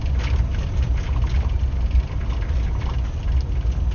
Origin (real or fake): real